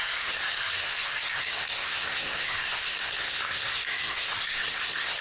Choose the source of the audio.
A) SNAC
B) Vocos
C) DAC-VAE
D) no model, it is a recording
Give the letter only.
A